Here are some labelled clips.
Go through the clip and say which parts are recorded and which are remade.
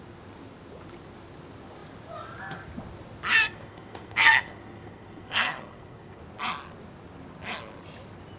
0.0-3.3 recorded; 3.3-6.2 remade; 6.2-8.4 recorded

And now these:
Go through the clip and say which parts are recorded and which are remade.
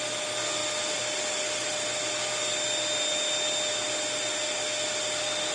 0.0-5.5 recorded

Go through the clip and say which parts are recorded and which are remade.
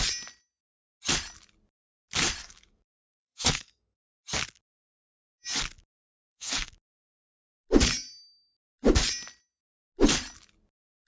0.0-2.4 recorded; 2.4-4.0 remade; 4.0-6.2 recorded; 6.2-6.7 remade; 6.7-11.1 recorded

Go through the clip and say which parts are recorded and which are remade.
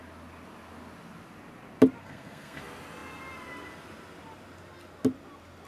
0.0-2.0 recorded; 2.0-2.6 remade; 2.6-5.7 recorded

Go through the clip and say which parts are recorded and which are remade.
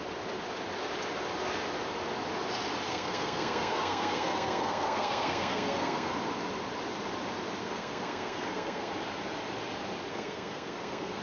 0.0-2.9 recorded; 2.9-6.1 remade; 6.1-7.6 recorded; 7.6-8.9 remade; 8.9-10.1 recorded; 10.1-11.2 remade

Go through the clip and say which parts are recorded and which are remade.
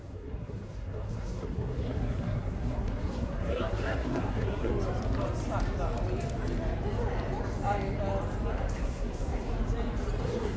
0.0-4.7 remade; 4.7-8.5 recorded; 8.5-9.5 remade; 9.5-10.2 recorded; 10.2-10.6 remade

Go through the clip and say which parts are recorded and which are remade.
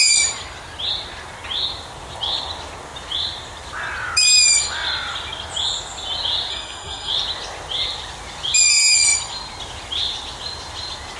0.0-6.5 recorded; 6.5-7.1 remade; 7.1-11.2 recorded